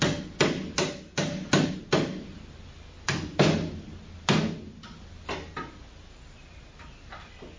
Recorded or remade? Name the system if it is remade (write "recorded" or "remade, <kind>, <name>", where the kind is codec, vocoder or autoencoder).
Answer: recorded